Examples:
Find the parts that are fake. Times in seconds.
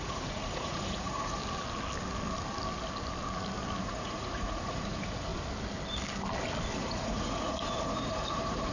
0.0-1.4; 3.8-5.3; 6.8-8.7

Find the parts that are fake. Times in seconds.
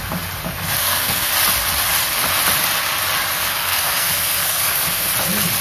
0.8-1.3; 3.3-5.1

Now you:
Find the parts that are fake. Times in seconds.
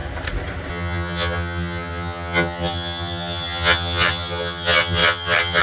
0.7-5.6